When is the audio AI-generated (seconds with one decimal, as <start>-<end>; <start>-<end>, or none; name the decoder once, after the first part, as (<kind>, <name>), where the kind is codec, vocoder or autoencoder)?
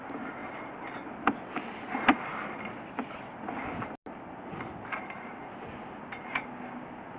none